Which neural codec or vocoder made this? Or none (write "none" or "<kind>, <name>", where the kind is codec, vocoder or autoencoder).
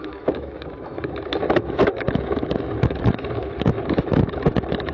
autoencoder, DAC-VAE